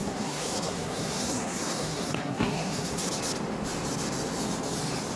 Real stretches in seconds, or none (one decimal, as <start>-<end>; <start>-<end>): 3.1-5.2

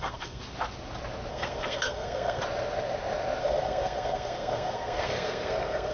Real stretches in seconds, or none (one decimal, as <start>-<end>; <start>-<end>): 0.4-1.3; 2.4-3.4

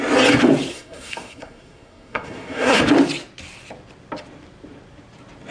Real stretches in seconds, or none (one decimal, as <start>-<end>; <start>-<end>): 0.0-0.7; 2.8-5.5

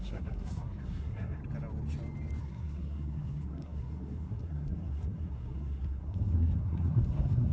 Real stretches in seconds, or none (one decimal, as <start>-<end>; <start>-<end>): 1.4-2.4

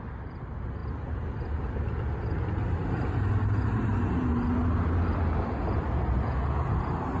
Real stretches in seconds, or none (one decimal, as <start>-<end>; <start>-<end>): 0.0-7.2

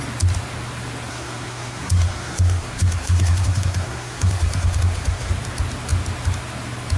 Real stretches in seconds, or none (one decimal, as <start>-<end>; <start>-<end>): 0.0-1.1; 5.3-7.0

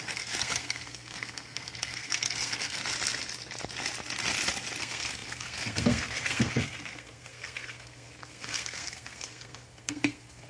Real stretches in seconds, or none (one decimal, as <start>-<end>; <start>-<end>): 2.8-4.8